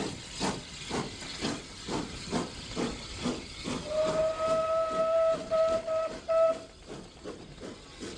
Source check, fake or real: real